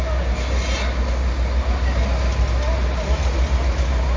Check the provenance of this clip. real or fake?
real